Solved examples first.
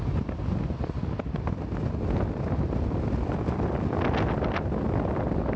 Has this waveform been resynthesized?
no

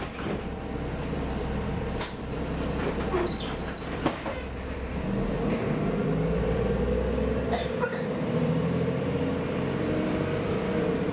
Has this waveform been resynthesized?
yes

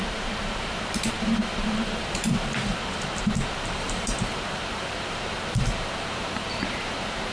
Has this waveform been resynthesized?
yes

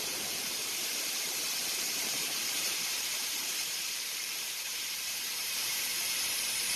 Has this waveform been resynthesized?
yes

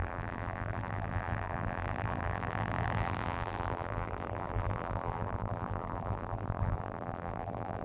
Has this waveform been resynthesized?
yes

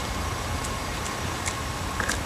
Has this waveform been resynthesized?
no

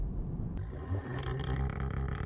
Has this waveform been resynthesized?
yes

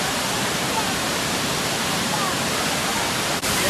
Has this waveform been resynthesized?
yes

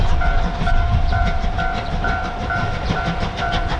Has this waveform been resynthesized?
yes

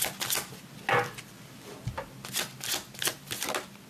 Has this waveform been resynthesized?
no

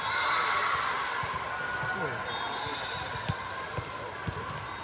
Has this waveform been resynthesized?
no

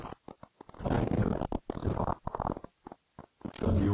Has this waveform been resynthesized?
no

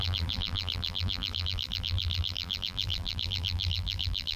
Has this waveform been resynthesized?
yes